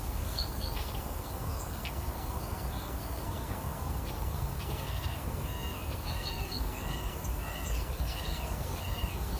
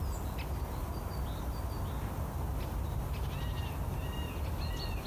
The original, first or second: second